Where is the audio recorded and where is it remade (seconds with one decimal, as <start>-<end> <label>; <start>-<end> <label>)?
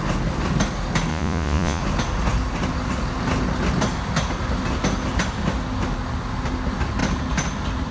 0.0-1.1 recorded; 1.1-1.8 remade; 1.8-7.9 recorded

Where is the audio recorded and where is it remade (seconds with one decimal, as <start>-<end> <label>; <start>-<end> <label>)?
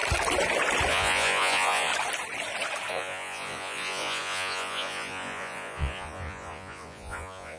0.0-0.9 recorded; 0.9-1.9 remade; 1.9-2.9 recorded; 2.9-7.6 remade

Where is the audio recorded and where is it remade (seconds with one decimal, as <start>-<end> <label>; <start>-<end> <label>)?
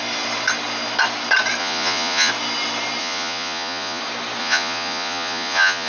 0.0-1.6 recorded; 1.6-2.3 remade; 2.3-3.0 recorded; 3.0-4.0 remade; 4.0-4.4 recorded; 4.4-5.9 remade